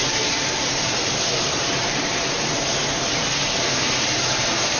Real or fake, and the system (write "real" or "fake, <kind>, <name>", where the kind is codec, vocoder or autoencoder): fake, vocoder, BigVGAN v2